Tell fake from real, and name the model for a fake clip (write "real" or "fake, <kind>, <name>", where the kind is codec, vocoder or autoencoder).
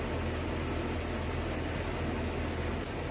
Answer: real